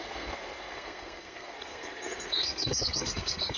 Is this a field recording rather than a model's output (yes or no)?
no